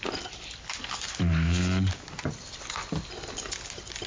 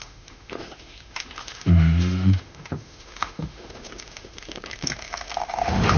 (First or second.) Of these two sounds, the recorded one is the first